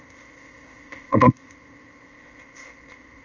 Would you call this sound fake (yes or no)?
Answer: yes